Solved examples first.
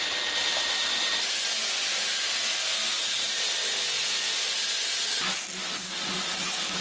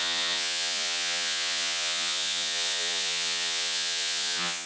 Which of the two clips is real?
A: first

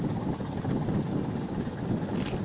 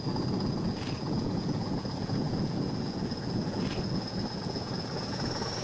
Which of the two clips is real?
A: first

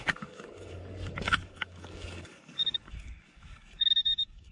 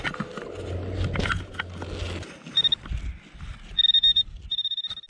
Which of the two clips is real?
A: second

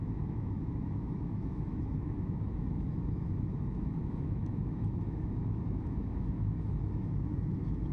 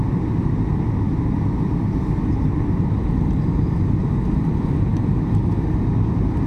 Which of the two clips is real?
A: second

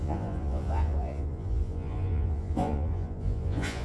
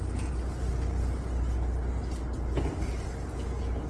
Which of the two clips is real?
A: second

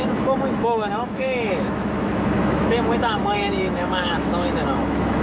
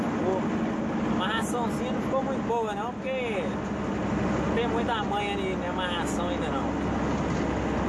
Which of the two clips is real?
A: second